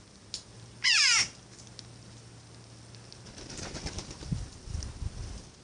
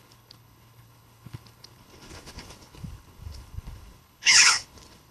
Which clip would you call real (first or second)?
first